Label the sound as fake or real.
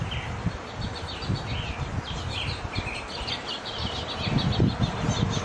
real